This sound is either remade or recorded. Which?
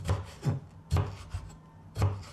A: recorded